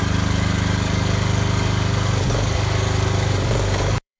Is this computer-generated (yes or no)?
yes